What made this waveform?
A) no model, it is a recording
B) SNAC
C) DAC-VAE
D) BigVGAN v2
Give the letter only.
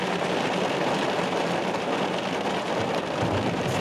A